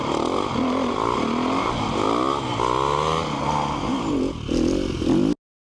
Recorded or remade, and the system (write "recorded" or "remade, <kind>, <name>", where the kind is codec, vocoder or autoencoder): recorded